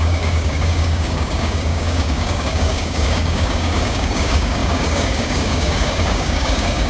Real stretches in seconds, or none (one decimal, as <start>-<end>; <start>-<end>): none